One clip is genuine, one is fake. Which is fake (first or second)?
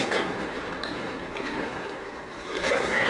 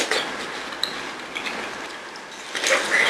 first